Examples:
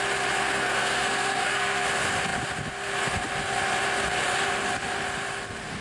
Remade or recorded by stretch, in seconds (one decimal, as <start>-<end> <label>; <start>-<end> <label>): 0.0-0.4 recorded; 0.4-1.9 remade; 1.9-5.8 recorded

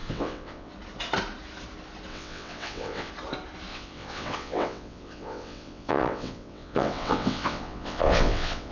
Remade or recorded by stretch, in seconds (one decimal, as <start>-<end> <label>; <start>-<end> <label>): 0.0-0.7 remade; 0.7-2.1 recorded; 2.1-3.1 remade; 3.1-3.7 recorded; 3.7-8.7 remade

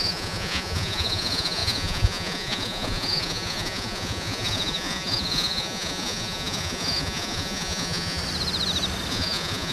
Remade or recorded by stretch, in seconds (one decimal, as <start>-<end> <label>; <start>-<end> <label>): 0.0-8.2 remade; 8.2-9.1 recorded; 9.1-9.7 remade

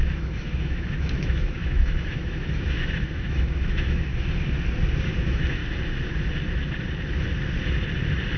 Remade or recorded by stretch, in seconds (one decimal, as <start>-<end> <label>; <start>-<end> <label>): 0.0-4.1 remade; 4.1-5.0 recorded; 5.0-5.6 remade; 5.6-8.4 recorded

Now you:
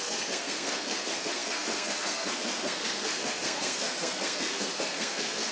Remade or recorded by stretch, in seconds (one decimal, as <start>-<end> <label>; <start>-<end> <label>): 0.0-5.5 remade